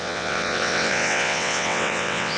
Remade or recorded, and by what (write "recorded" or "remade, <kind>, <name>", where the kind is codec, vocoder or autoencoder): remade, vocoder, WaveNeXt